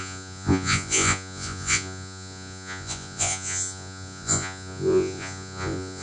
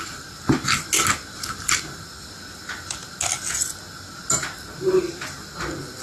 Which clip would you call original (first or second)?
second